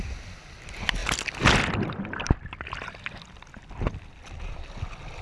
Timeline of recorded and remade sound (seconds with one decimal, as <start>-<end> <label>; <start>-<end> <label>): 0.0-5.2 recorded